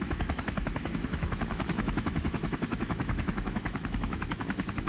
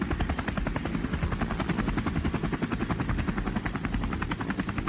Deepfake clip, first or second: first